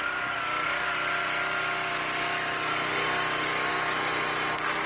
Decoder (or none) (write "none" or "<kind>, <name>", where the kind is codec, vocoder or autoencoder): none